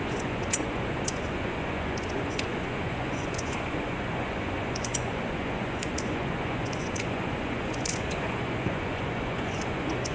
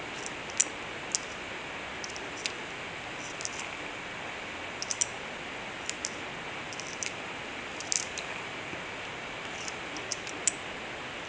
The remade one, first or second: first